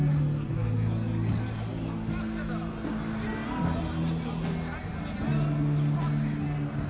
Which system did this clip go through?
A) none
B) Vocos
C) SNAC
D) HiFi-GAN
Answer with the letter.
A